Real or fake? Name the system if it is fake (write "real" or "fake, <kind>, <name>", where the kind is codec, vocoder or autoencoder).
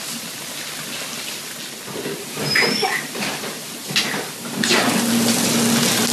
real